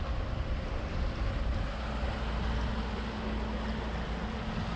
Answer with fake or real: real